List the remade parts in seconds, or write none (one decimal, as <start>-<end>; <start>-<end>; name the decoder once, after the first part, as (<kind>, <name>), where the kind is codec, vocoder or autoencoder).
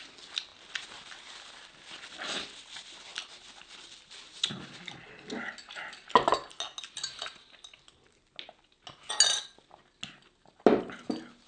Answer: none